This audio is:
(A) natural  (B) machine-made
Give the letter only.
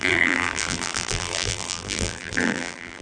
B